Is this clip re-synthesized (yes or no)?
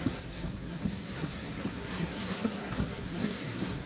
yes